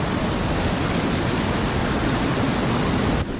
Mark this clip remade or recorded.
recorded